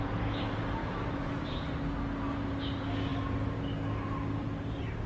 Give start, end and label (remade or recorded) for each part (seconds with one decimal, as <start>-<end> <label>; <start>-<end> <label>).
0.0-0.8 recorded; 0.8-1.6 remade; 1.6-5.1 recorded